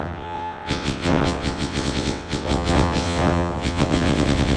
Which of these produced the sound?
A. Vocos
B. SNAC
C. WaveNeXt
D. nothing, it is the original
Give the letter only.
C